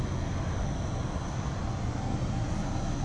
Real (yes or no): yes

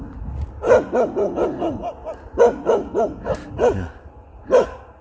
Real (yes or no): yes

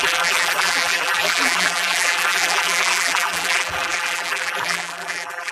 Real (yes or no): no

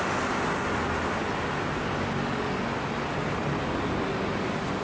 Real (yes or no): yes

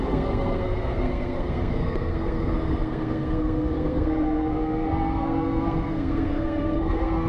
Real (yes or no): no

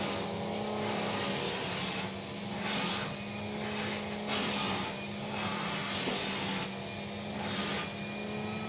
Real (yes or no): yes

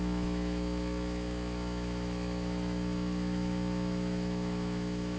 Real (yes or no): no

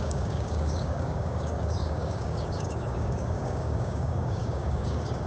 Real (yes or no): no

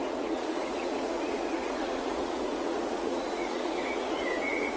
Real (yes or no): no